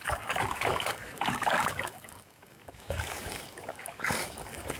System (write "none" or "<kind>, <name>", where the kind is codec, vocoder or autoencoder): codec, DAC